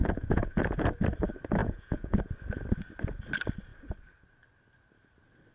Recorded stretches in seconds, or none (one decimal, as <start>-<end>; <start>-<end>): 0.9-1.6; 2.2-5.5